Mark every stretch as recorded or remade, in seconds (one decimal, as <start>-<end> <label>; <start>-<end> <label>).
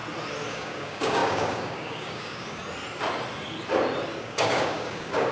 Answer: 0.0-0.5 recorded; 0.5-2.6 remade; 2.6-4.2 recorded; 4.2-5.3 remade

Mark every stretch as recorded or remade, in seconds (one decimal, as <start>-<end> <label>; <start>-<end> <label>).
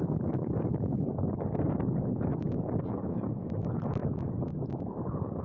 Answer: 0.0-4.0 remade; 4.0-4.8 recorded; 4.8-5.4 remade